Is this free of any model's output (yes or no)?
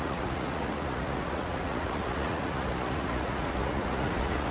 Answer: no